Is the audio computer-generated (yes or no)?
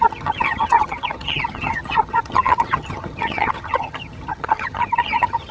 yes